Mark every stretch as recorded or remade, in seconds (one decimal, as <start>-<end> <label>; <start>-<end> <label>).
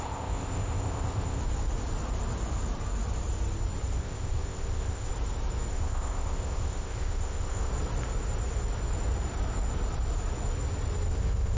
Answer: 0.0-1.4 remade; 1.4-4.0 recorded; 4.0-5.1 remade; 5.1-5.7 recorded; 5.7-7.7 remade; 7.7-11.1 recorded; 11.1-11.6 remade